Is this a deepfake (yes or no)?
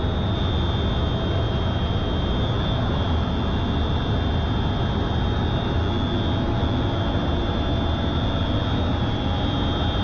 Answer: no